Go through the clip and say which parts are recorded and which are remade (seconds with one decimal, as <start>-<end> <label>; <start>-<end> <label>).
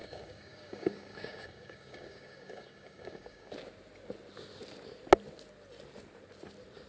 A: 0.0-3.5 remade; 3.5-6.9 recorded